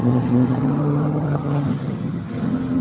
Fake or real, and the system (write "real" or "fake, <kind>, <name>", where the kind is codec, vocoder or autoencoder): fake, vocoder, HiFi-GAN